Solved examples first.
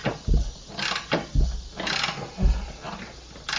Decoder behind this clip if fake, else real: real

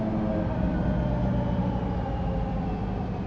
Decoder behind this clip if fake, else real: real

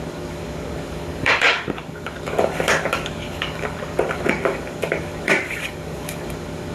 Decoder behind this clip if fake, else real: fake, codec, DAC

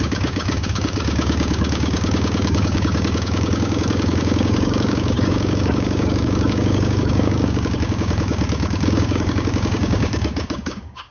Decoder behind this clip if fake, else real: fake, codec, DAC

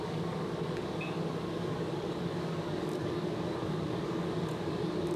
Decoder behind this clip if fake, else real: fake, codec, DAC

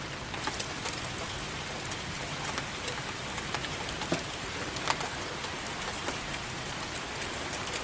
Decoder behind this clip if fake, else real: real